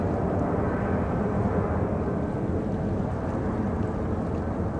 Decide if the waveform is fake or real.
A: real